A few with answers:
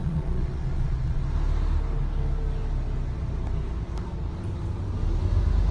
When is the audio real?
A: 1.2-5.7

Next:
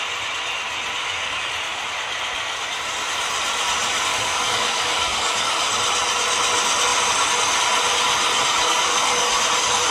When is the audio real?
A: 0.0-1.0; 1.5-4.1; 5.6-8.6; 9.3-9.9

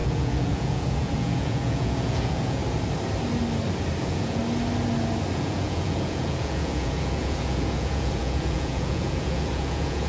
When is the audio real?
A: 2.6-4.0; 4.4-5.3

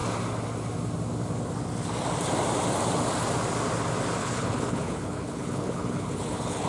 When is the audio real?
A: 0.0-4.2

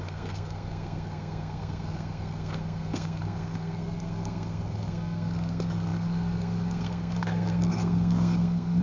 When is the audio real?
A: none

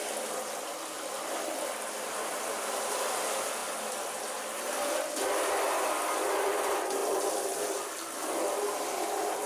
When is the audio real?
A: 0.0-9.5

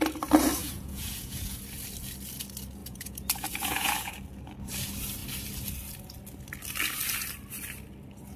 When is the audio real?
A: 0.0-0.6; 1.6-2.8; 4.1-8.4